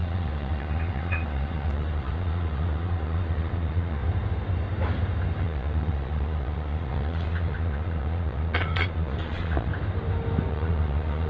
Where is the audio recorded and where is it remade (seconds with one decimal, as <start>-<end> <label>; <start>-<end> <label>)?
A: 0.0-4.0 remade; 4.0-5.4 recorded; 5.4-9.7 remade; 9.7-10.5 recorded; 10.5-11.3 remade